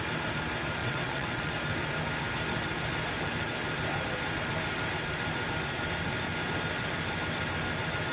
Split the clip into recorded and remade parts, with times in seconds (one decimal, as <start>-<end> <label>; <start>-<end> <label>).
0.0-0.8 recorded; 0.8-1.5 remade; 1.5-8.1 recorded